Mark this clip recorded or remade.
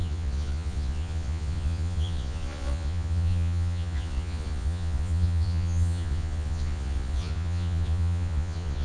remade